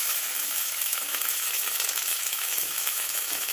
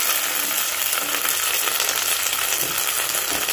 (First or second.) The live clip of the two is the second